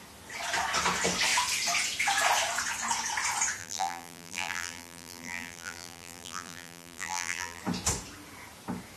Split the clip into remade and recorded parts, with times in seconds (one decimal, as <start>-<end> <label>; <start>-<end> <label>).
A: 0.0-3.6 recorded; 3.6-7.6 remade; 7.6-9.0 recorded